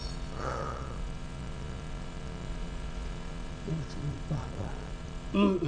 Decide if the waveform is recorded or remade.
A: remade